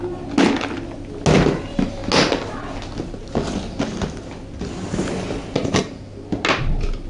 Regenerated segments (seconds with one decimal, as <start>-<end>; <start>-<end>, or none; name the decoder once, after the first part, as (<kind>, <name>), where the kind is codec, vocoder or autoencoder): none